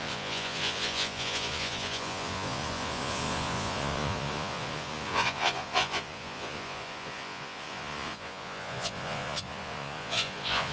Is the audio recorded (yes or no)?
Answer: no